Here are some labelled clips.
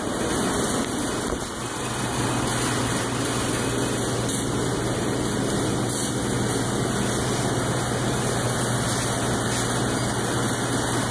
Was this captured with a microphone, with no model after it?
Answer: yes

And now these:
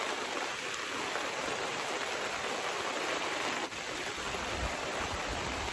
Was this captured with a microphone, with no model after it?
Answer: yes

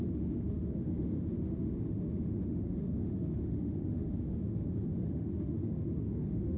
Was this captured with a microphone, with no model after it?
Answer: no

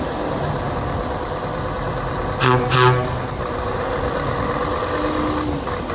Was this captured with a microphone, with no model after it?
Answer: yes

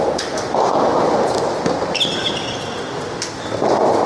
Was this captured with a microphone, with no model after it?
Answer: yes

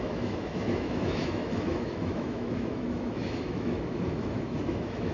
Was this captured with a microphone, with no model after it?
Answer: no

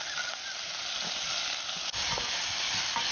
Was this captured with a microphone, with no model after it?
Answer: yes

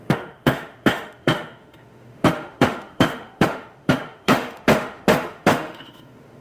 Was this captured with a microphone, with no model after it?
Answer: no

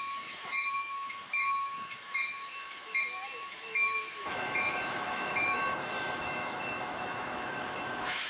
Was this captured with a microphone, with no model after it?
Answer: no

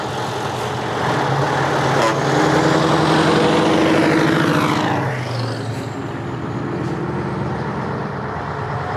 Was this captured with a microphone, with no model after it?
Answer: yes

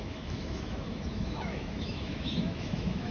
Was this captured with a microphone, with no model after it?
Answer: no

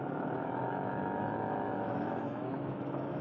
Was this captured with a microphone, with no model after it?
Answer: no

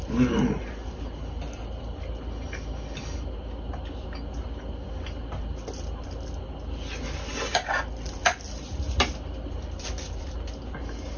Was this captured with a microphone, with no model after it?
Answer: yes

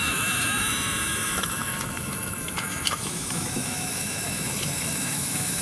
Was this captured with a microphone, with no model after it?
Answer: no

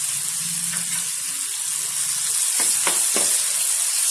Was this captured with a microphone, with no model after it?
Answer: yes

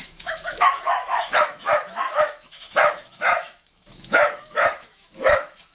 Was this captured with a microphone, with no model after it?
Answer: no